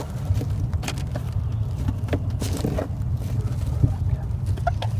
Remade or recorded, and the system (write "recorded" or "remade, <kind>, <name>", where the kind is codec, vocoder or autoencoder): recorded